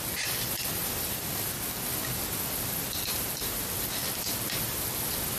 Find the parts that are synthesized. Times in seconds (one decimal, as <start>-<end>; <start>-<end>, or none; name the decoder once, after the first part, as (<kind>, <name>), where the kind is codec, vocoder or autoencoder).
none

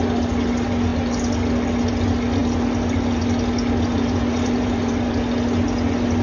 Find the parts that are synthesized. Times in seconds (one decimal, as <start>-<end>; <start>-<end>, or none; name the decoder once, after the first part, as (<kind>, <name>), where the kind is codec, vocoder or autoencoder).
3.9-5.1 (vocoder, BigVGAN v2)

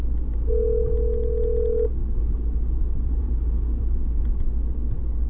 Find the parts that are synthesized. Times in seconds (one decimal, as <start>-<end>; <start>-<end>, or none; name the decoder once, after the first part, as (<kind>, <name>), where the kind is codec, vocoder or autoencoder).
2.0-4.5 (vocoder, BigVGAN v2)

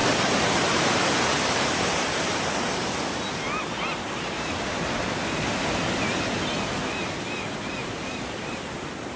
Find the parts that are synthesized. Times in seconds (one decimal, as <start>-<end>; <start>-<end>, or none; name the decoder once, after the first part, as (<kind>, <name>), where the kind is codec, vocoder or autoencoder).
0.0-4.2 (vocoder, BigVGAN v2); 7.8-9.2

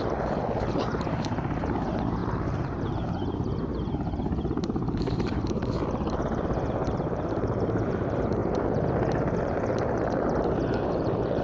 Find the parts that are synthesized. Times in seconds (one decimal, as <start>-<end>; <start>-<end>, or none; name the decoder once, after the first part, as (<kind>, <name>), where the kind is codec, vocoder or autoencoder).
0.0-8.4 (vocoder, BigVGAN v2); 9.4-11.4

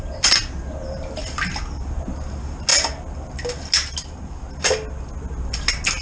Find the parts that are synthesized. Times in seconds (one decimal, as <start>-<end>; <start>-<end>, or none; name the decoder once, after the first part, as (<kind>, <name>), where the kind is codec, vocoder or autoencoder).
none